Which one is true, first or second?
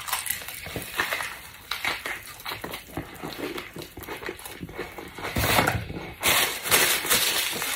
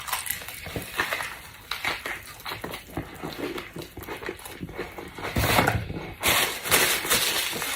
second